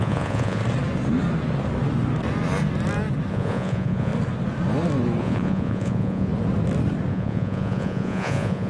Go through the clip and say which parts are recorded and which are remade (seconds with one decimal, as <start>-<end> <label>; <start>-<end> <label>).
0.0-0.6 remade; 0.6-3.3 recorded; 3.3-4.1 remade; 4.1-5.2 recorded; 5.2-6.3 remade; 6.3-7.1 recorded; 7.1-8.7 remade